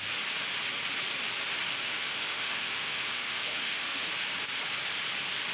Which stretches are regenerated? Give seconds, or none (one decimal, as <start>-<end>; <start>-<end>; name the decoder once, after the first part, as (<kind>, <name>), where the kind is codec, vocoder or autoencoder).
1.8-4.1 (autoencoder, DAC-VAE)